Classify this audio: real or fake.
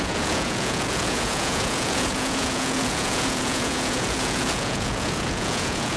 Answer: fake